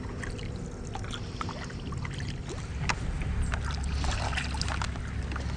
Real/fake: real